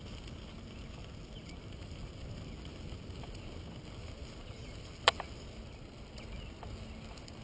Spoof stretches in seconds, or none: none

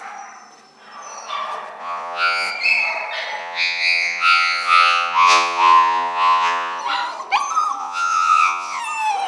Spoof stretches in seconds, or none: 1.8-2.5 (vocoder, Vocos); 3.4-6.8; 7.8-8.8

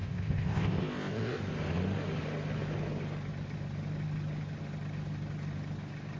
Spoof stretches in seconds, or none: 0.0-1.4 (codec, ZipCodec)

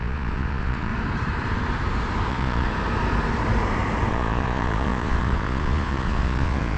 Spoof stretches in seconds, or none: 0.0-0.9 (vocoder, Vocos); 2.3-2.7; 4.1-6.8

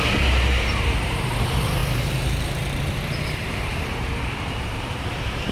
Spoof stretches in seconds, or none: 0.0-5.5 (vocoder, BigVGAN v2)

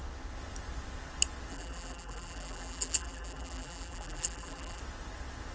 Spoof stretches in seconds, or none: 1.5-4.8 (vocoder, BigVGAN v2)